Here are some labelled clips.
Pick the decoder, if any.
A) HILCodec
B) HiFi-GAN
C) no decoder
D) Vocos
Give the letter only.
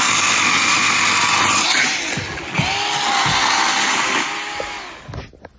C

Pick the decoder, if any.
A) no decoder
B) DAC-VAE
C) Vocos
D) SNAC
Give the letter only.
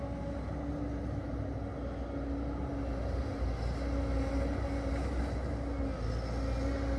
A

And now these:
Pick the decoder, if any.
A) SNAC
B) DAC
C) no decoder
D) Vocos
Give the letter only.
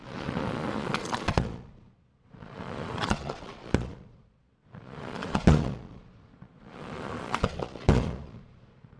D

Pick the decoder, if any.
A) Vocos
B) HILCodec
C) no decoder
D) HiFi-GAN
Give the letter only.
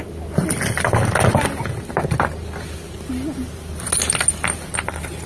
C